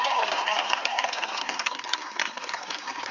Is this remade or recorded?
remade